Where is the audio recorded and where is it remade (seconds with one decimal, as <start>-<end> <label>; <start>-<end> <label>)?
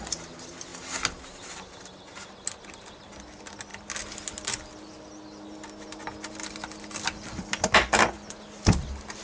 0.0-9.2 recorded